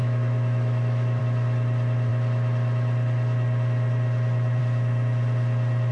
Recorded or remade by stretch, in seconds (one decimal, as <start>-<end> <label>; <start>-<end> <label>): 0.0-1.2 remade; 1.2-5.9 recorded

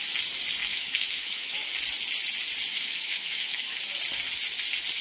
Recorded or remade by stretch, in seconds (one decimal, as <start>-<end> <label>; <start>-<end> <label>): 0.0-0.6 recorded; 0.6-1.7 remade; 1.7-2.7 recorded; 2.7-3.8 remade; 3.8-5.0 recorded

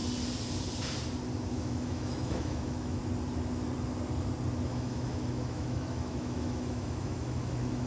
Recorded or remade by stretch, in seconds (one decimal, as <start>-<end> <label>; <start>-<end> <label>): 0.0-1.5 recorded; 1.5-3.0 remade; 3.0-4.7 recorded; 4.7-7.9 remade

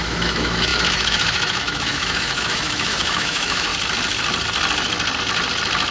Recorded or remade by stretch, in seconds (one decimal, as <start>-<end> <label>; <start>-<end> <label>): 0.0-3.7 remade; 3.7-5.9 recorded